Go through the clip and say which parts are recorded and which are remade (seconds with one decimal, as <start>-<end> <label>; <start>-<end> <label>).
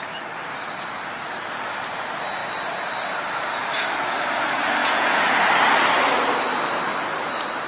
0.0-4.8 recorded; 4.8-5.4 remade; 5.4-7.7 recorded